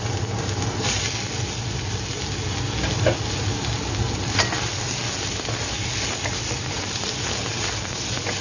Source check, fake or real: real